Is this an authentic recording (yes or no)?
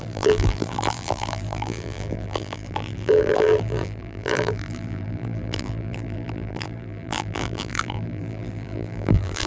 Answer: no